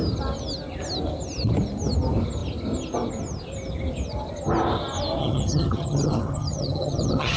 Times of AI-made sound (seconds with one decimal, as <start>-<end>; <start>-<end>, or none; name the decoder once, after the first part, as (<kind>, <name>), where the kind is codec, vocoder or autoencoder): 5.2-7.4 (vocoder, HiFi-GAN)